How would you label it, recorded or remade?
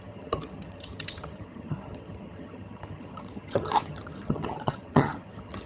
remade